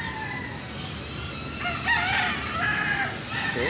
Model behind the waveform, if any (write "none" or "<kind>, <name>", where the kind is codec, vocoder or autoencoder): none